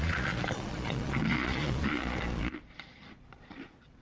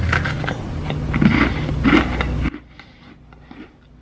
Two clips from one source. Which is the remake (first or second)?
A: first